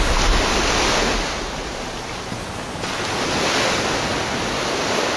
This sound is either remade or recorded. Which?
recorded